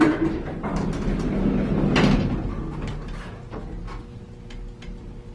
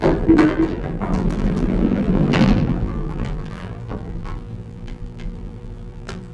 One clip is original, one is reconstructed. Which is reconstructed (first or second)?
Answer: second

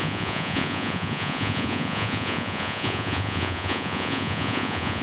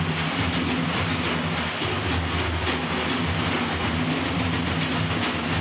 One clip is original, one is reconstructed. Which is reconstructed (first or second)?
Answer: first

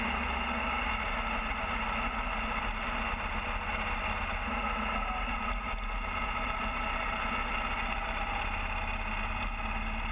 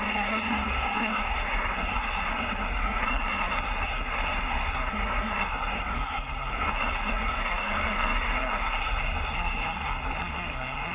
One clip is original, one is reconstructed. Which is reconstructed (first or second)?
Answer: second